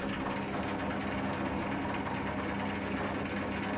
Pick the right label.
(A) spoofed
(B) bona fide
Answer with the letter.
B